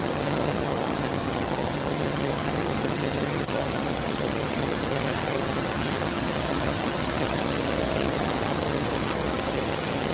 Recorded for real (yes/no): no